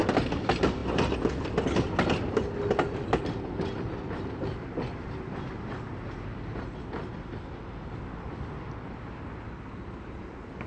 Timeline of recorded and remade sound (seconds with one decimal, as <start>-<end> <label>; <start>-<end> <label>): 0.0-10.7 recorded